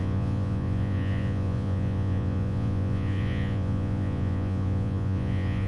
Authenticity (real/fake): fake